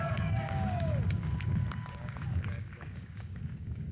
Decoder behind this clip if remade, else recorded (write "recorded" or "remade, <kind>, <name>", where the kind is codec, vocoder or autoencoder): remade, codec, DAC